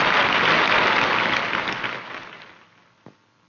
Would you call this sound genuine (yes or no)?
yes